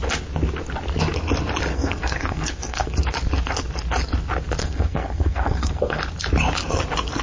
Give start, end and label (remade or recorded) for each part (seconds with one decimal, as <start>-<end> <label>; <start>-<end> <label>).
0.0-1.7 recorded; 1.7-3.0 remade; 3.0-4.6 recorded; 4.6-6.0 remade; 6.0-7.2 recorded